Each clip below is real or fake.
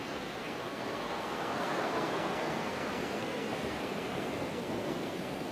fake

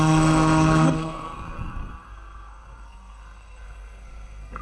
fake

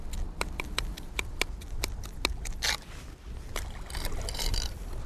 real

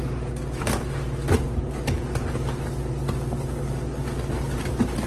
real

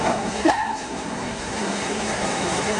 fake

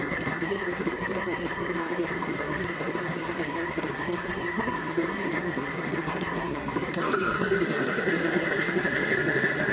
fake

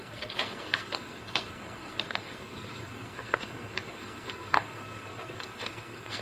fake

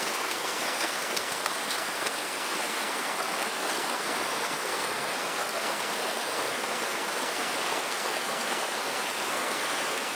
fake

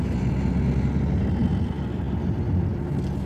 real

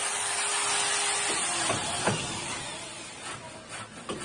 real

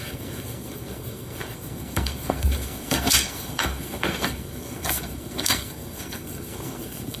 fake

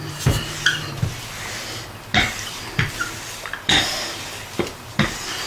real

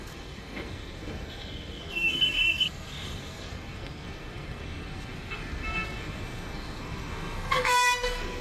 fake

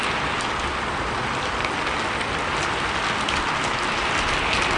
real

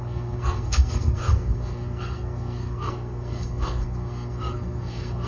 fake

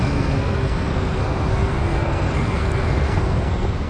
fake